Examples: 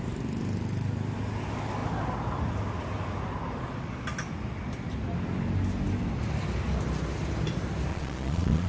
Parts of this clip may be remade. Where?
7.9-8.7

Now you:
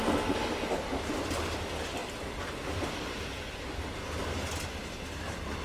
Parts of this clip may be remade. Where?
none

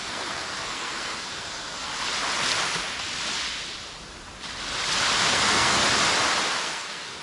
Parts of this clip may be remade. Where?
0.0-1.9; 5.3-5.8; 6.6-7.2

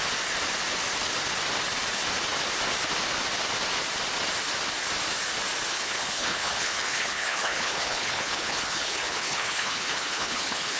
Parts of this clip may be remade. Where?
5.7-10.8

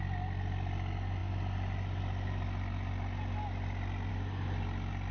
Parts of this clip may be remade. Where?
none

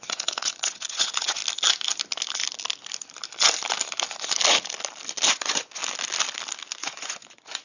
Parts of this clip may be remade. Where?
0.0-1.4; 5.3-5.8; 6.8-7.6

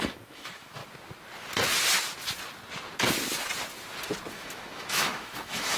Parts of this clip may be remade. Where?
0.0-0.8; 4.3-5.8